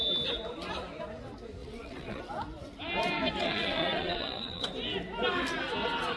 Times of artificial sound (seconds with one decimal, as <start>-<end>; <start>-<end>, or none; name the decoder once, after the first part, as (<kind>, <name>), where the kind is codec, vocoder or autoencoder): 1.6-2.2 (vocoder, WaveNeXt); 3.4-4.7

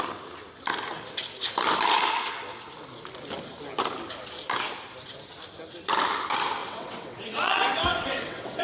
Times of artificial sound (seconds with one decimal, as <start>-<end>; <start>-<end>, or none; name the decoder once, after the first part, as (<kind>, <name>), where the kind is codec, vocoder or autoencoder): 6.6-8.6 (vocoder, WaveNeXt)

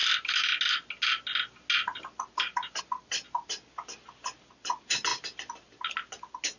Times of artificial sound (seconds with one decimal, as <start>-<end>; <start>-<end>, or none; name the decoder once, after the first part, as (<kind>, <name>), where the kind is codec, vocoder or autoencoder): none